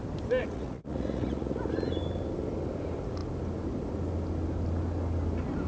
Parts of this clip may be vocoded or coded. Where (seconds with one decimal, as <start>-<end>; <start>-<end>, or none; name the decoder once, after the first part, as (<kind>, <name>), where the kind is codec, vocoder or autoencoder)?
0.4-1.7 (vocoder, Vocos)